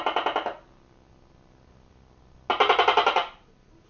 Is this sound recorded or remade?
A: recorded